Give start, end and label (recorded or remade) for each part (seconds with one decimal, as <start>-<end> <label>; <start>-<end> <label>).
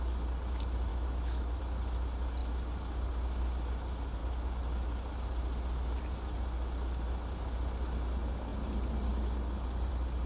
0.0-0.9 recorded; 0.9-1.6 remade; 1.6-10.3 recorded